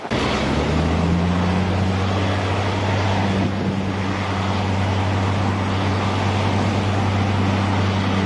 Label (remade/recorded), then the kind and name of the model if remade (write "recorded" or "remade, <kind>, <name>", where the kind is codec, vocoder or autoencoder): recorded